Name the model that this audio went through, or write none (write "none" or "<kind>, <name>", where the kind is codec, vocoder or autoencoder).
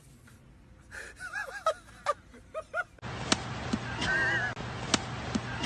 none